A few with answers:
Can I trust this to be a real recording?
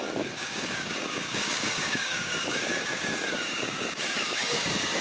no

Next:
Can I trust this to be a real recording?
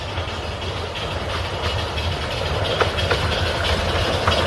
yes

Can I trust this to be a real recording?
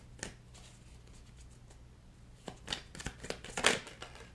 yes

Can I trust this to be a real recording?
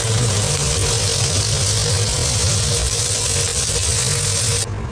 yes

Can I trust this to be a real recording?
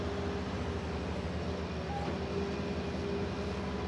yes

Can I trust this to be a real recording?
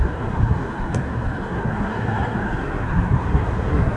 no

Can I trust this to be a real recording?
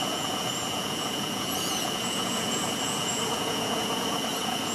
no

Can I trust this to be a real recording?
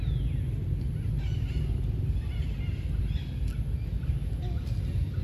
yes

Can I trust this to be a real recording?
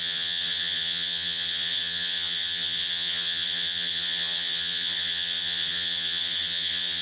no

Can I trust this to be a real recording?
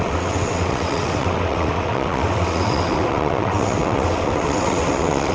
no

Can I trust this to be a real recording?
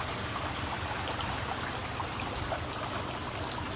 yes